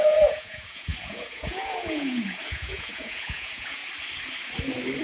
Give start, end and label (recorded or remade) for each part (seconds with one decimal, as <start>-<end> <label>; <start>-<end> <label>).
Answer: 0.0-3.8 remade; 3.8-5.0 recorded